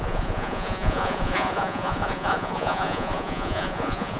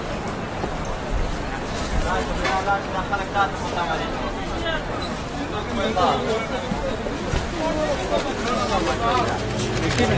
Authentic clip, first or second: second